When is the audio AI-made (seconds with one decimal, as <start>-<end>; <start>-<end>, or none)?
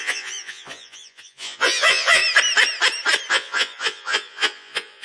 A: 0.0-2.2; 3.3-5.0